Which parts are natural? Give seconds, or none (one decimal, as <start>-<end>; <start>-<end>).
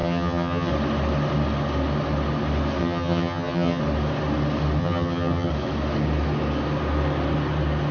0.7-2.8; 3.8-4.8; 5.5-7.9